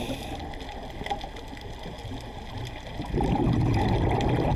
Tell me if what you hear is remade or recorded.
recorded